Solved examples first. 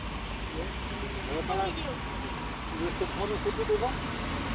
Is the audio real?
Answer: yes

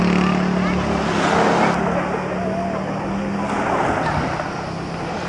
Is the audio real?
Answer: yes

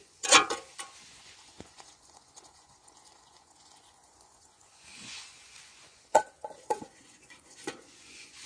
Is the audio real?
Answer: no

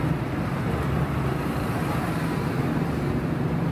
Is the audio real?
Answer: yes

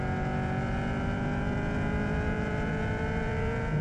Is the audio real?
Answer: no